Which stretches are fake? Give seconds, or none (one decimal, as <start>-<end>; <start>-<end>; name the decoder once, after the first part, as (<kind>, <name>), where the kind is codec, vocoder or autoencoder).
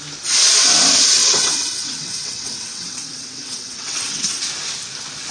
1.2-4.4 (vocoder, WaveNeXt)